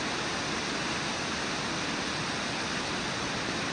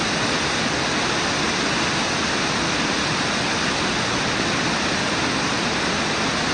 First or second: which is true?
second